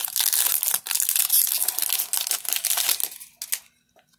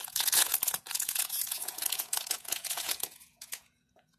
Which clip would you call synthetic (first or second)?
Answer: second